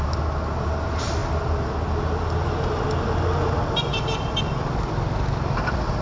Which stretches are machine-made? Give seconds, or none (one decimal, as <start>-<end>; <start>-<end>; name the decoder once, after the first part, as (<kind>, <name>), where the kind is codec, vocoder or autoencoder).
none